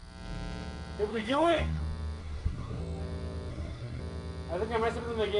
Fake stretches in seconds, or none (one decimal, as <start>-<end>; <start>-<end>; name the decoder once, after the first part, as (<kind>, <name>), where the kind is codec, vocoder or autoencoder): 1.1-1.8 (codec, SNAC); 2.2-2.8; 3.5-4.0